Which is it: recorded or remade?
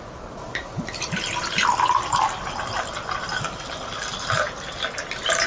recorded